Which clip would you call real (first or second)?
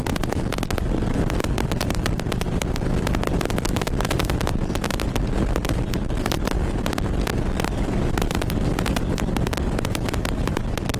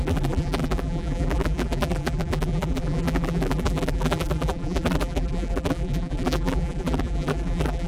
first